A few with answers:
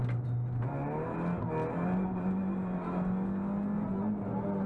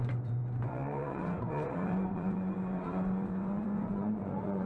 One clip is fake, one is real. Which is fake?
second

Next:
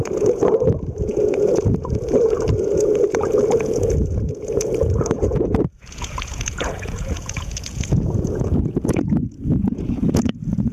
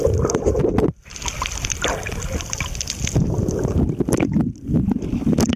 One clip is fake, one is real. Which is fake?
first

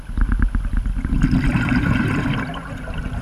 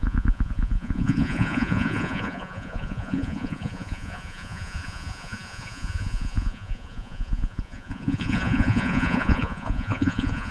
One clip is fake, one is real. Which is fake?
second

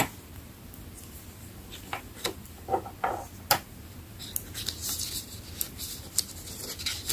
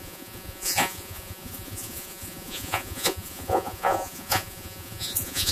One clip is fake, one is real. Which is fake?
second